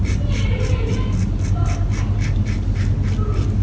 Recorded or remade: recorded